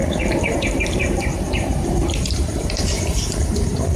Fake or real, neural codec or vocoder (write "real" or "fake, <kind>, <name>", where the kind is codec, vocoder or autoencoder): fake, vocoder, BigVGAN v2